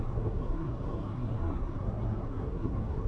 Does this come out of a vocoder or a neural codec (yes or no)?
yes